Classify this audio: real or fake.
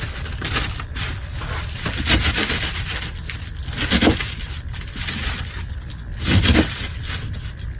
real